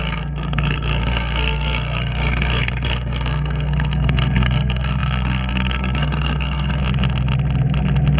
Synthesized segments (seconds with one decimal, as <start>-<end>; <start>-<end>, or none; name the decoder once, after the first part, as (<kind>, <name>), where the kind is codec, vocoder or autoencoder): 0.0-6.8 (codec, SNAC)